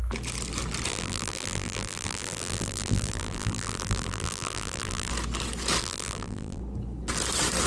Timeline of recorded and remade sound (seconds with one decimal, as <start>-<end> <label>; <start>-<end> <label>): 0.0-0.9 recorded; 0.9-5.1 remade; 5.1-5.8 recorded; 5.8-6.6 remade; 6.6-7.7 recorded